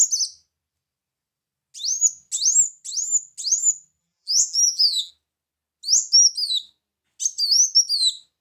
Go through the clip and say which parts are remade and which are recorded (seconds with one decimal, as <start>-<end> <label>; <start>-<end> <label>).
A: 0.0-4.0 recorded; 4.0-5.1 remade; 5.1-8.4 recorded